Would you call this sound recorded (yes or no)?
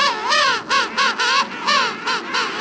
yes